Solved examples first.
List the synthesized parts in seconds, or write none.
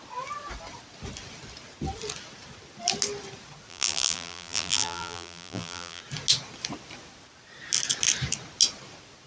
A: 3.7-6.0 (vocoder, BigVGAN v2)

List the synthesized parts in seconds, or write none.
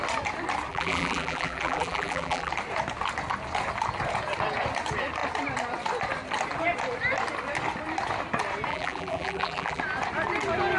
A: 0.7-2.5 (vocoder, BigVGAN v2); 8.7-9.8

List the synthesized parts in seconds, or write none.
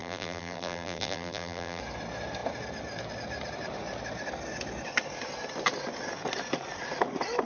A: 0.0-1.8 (vocoder, BigVGAN v2)